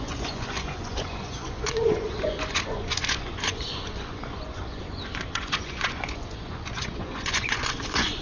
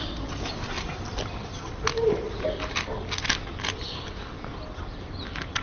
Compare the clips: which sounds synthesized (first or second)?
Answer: first